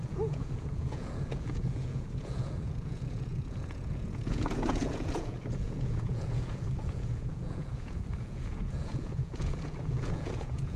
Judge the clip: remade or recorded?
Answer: remade